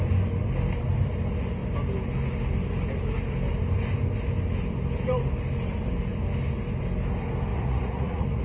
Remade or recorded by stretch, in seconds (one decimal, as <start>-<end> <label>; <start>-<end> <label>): 0.0-7.5 recorded; 7.5-8.4 remade